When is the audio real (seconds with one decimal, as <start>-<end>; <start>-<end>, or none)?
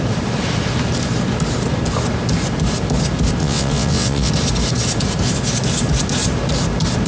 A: 0.0-3.4; 4.3-7.1